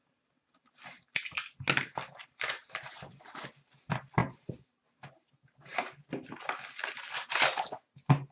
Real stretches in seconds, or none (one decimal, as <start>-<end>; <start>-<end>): 0.0-2.2; 2.8-4.2; 5.3-8.3